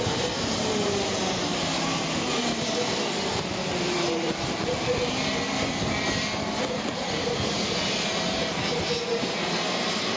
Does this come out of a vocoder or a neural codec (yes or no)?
yes